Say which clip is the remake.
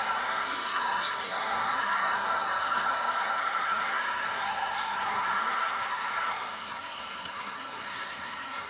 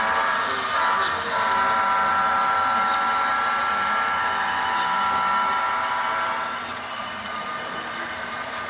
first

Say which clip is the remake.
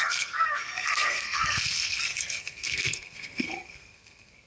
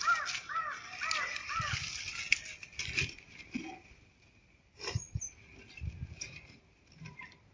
first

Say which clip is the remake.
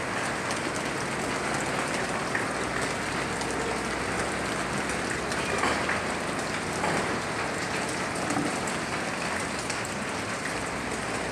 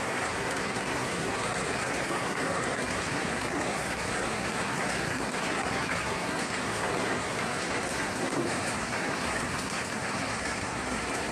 second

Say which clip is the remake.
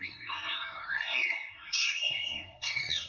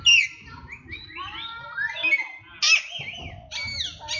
first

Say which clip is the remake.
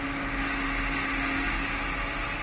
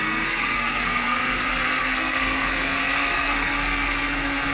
second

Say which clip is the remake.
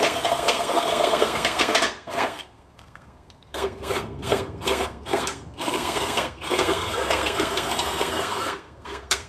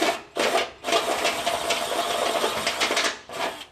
first